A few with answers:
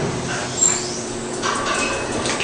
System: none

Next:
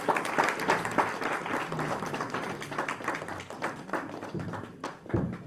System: none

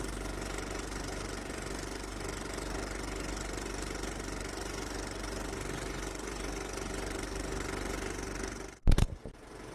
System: none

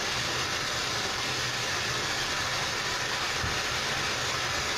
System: none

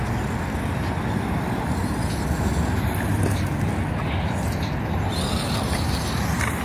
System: none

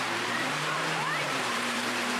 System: vocoder, BigVGAN v2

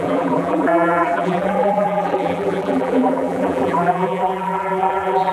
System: vocoder, BigVGAN v2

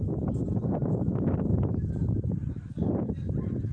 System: vocoder, BigVGAN v2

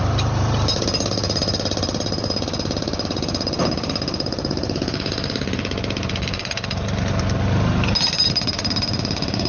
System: vocoder, BigVGAN v2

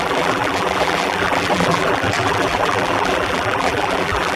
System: vocoder, BigVGAN v2